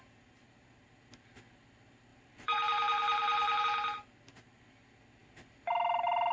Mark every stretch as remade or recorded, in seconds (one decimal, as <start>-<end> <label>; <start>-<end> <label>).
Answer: 0.0-2.1 recorded; 2.1-3.6 remade; 3.6-6.3 recorded